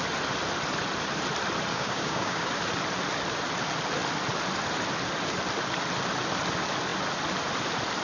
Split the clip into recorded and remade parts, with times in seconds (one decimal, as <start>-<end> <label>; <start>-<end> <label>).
0.0-1.7 recorded; 1.7-2.5 remade; 2.5-8.0 recorded